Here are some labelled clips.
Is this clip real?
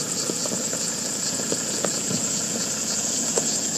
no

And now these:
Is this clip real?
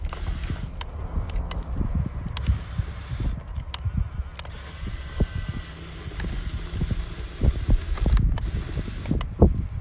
yes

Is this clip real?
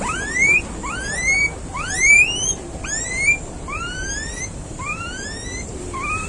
no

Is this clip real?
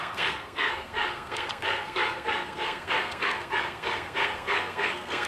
no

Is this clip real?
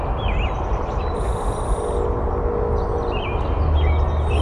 yes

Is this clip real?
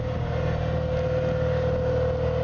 yes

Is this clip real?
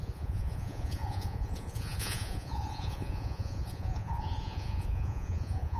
no